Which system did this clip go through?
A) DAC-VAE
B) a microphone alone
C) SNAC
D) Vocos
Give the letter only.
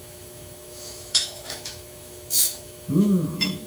A